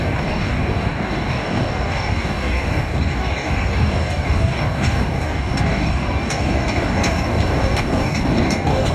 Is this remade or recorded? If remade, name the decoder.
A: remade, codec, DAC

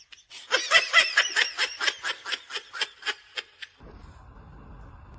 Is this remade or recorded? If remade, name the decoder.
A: recorded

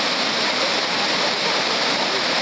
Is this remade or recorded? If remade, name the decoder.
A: remade, vocoder, BigVGAN v2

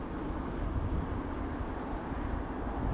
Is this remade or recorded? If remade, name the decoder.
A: recorded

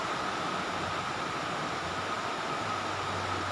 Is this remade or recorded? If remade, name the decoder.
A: recorded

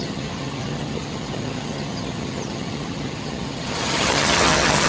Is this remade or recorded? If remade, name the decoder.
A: remade, vocoder, HiFi-GAN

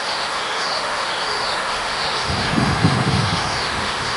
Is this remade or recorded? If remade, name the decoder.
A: remade, autoencoder, DAC-VAE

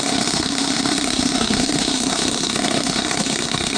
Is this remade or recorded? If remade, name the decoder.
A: remade, codec, SNAC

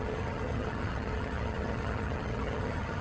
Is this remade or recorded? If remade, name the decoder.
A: remade, vocoder, HiFi-GAN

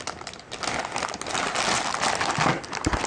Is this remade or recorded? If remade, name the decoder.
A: recorded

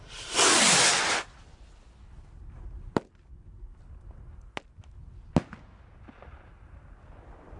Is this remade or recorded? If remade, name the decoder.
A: recorded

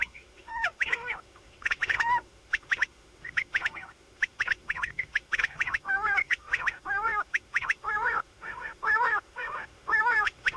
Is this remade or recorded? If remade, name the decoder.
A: remade, autoencoder, DAC-VAE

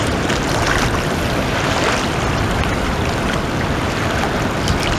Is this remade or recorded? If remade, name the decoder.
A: recorded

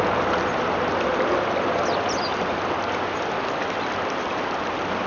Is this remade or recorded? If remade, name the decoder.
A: recorded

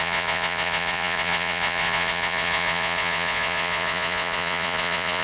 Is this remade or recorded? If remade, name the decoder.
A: remade, vocoder, Vocos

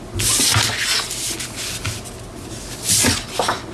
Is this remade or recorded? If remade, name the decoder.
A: recorded